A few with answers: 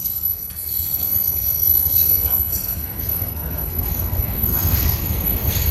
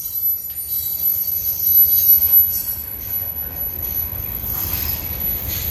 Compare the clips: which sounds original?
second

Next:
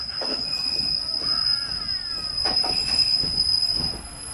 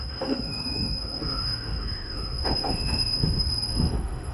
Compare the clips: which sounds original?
first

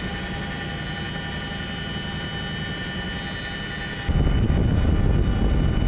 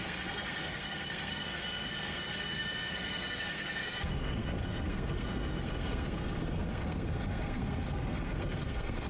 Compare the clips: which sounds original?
first